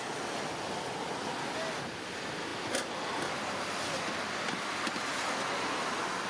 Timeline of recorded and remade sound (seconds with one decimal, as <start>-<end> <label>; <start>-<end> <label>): 0.0-6.3 recorded

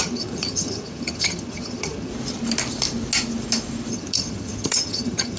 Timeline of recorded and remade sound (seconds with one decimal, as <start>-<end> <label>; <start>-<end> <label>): 0.0-2.1 remade; 2.1-3.9 recorded; 3.9-5.4 remade

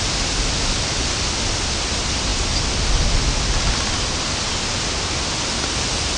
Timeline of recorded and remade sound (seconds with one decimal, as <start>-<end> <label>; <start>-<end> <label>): 0.0-6.2 recorded

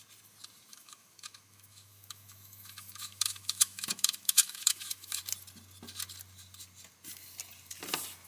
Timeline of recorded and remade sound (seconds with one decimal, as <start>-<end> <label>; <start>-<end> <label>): 0.0-0.7 recorded; 0.7-5.2 remade; 5.2-8.3 recorded

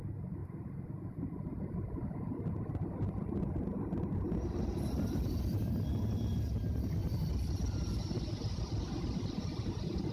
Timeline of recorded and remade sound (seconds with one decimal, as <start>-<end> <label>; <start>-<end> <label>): 0.0-10.1 recorded

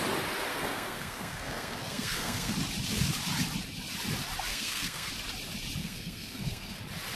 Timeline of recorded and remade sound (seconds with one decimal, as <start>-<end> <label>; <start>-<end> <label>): 0.0-0.5 recorded; 0.5-2.5 remade; 2.5-4.5 recorded; 4.5-5.1 remade; 5.1-5.8 recorded; 5.8-6.8 remade; 6.8-7.2 recorded

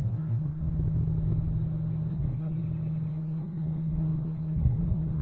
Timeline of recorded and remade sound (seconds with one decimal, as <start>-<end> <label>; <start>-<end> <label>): 0.0-0.7 remade; 0.7-2.1 recorded; 2.1-2.6 remade; 2.6-3.1 recorded; 3.1-5.2 remade

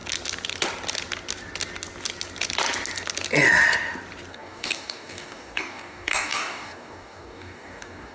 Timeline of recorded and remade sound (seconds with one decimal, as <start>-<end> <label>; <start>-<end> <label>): 0.0-4.3 recorded; 4.3-8.1 remade